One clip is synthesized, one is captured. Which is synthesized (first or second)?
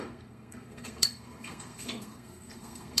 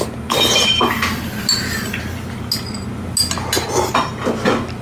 first